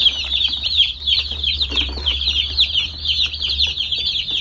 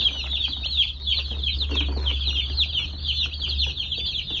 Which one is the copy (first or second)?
first